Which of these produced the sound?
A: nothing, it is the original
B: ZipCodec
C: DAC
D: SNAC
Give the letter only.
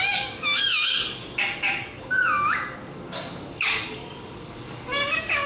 C